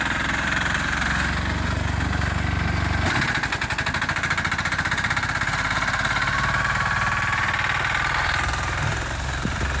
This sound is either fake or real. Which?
real